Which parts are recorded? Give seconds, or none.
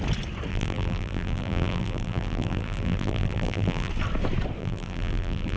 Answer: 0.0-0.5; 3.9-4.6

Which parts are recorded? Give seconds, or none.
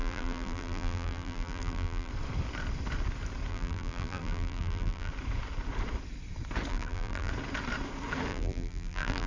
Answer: 2.1-3.5; 5.1-6.7; 7.3-8.3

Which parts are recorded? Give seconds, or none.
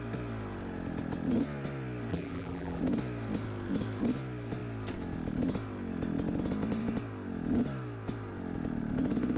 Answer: 0.0-2.1; 2.8-9.4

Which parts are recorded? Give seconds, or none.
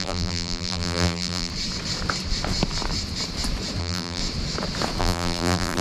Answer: 1.5-3.8; 4.2-5.0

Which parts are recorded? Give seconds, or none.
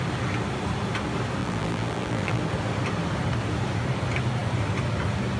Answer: 0.0-1.4; 2.4-5.4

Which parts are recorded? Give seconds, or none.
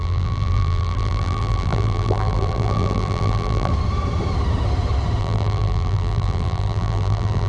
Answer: 3.7-5.2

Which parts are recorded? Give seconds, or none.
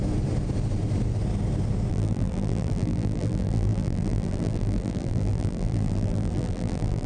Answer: 0.0-1.9